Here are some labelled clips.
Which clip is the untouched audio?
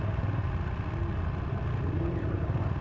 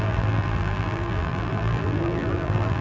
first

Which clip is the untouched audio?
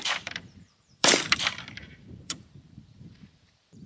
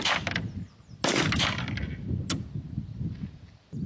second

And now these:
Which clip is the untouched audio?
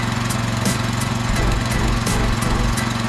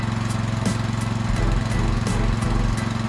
second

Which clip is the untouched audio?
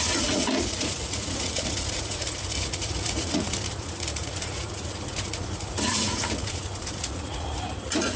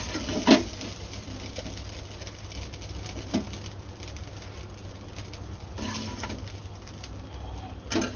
second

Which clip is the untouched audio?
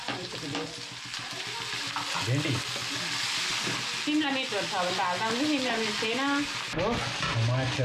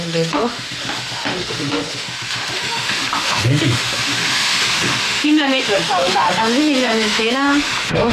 first